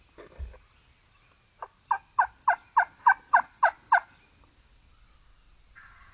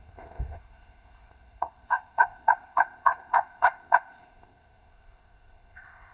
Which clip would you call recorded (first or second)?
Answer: first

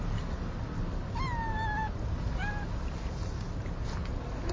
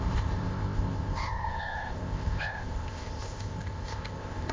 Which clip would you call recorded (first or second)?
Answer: first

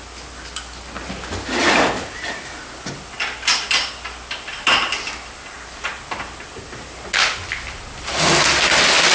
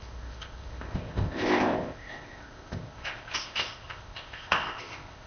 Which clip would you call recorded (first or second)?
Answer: first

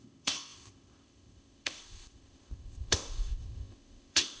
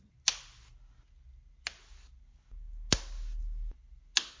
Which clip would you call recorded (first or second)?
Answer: second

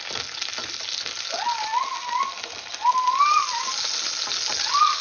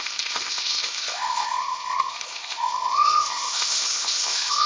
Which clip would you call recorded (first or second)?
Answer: first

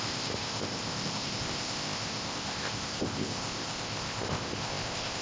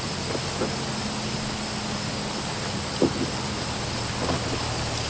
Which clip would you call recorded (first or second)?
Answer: second